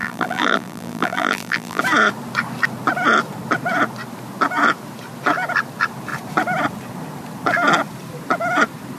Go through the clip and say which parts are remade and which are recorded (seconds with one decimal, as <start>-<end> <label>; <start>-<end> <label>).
0.0-1.8 remade; 1.8-9.0 recorded